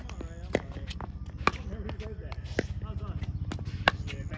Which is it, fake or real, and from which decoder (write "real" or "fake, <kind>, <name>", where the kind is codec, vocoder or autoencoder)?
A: real